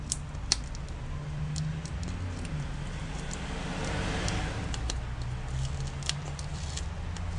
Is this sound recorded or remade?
recorded